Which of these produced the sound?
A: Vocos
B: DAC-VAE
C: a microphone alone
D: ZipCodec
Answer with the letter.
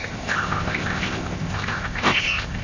D